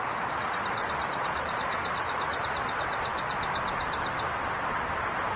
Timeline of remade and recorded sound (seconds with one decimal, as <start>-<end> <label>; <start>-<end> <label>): 0.0-5.4 recorded